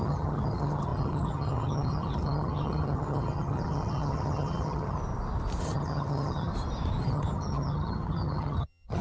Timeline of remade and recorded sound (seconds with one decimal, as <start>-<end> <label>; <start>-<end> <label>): 0.0-5.0 remade; 5.0-5.6 recorded; 5.6-6.5 remade; 6.5-7.0 recorded; 7.0-9.0 remade

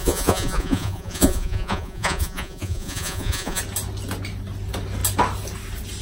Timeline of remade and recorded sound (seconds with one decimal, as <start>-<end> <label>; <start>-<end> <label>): 0.0-3.6 remade; 3.6-6.0 recorded

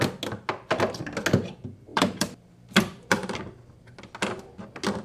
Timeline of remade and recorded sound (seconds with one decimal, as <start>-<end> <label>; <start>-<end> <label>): 0.0-1.9 recorded; 1.9-3.4 remade; 3.4-5.0 recorded

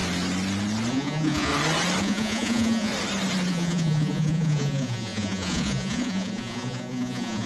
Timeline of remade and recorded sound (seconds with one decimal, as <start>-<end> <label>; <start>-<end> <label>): 0.0-0.9 recorded; 0.9-1.5 remade; 1.5-2.0 recorded; 2.0-2.9 remade; 2.9-3.5 recorded; 3.5-7.5 remade

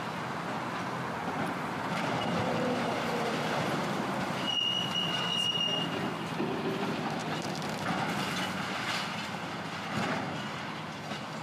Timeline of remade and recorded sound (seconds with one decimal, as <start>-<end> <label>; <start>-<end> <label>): 0.0-1.2 recorded; 1.2-5.6 remade; 5.6-7.2 recorded; 7.2-7.9 remade; 7.9-11.4 recorded

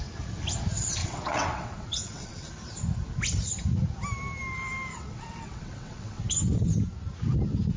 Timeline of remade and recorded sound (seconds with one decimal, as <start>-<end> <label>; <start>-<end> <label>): 0.0-1.0 recorded; 1.0-2.5 remade; 2.5-4.9 recorded; 4.9-6.2 remade; 6.2-7.8 recorded